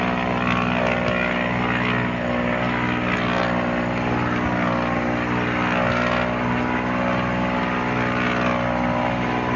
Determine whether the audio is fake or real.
real